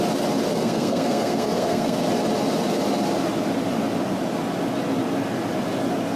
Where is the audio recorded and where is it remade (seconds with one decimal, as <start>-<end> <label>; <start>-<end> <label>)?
0.0-0.5 recorded; 0.5-2.0 remade; 2.0-6.2 recorded